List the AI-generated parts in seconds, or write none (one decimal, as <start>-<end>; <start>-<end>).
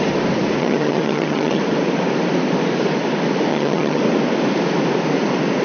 0.6-1.6; 3.5-4.0